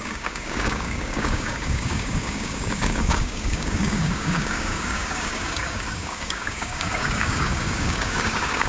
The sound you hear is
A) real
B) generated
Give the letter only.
B